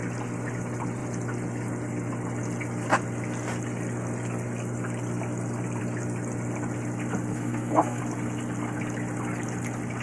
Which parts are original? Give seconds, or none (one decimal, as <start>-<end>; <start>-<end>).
0.0-7.3; 8.0-10.0